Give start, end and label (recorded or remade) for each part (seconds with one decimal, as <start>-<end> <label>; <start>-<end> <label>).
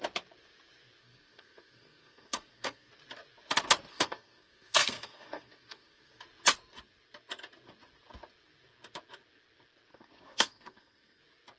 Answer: 0.0-1.0 recorded; 1.0-2.9 remade; 2.9-3.9 recorded; 3.9-6.2 remade; 6.2-9.9 recorded; 9.9-11.2 remade; 11.2-11.6 recorded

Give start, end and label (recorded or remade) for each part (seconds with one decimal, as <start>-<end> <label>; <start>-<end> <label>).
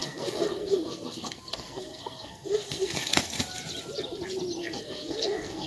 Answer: 0.0-3.4 remade; 3.4-4.6 recorded; 4.6-5.7 remade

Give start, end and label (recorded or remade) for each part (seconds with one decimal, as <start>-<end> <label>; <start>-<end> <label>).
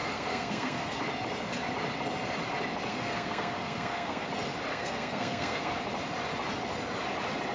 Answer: 0.0-1.0 remade; 1.0-2.9 recorded; 2.9-4.3 remade; 4.3-4.7 recorded; 4.7-5.7 remade; 5.7-7.5 recorded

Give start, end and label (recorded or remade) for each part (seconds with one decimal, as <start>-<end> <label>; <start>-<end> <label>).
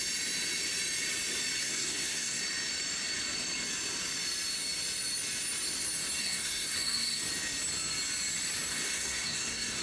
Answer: 0.0-1.6 recorded; 1.6-2.4 remade; 2.4-6.2 recorded; 6.2-7.2 remade; 7.2-8.7 recorded; 8.7-9.8 remade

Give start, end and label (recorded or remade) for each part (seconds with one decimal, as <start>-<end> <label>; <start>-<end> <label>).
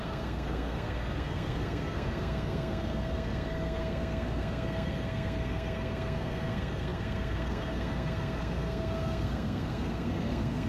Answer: 0.0-10.7 remade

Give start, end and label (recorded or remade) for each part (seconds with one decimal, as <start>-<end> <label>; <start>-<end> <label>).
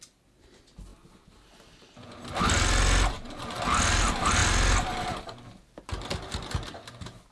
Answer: 0.0-7.3 recorded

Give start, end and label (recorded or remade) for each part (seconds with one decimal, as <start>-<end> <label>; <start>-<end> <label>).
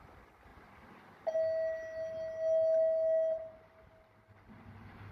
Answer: 0.0-5.1 recorded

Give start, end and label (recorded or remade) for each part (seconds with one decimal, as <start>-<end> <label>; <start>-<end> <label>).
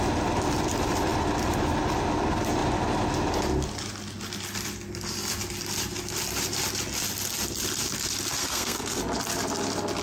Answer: 0.0-8.4 recorded; 8.4-9.0 remade; 9.0-10.0 recorded